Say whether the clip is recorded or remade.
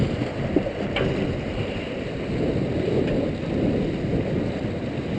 recorded